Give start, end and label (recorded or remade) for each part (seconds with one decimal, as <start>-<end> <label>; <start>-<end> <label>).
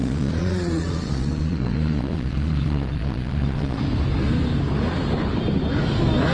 0.0-3.8 remade; 3.8-6.3 recorded